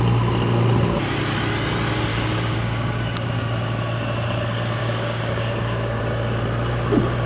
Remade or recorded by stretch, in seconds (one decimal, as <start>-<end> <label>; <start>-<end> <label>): 0.0-2.1 recorded; 2.1-3.3 remade; 3.3-4.8 recorded; 4.8-6.0 remade; 6.0-7.3 recorded